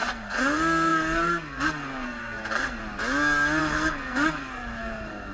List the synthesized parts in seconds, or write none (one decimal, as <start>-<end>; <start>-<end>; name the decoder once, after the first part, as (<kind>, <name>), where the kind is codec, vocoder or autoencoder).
0.0-2.8 (codec, SNAC); 3.6-5.3